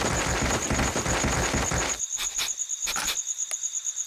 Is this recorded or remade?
recorded